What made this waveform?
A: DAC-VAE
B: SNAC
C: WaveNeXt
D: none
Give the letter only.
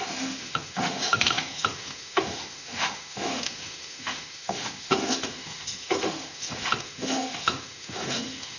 A